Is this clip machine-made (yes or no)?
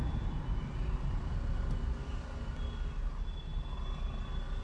no